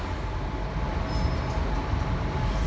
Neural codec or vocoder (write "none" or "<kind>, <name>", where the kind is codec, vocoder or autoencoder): none